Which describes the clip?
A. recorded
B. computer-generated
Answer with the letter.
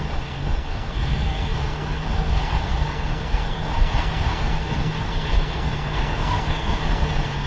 B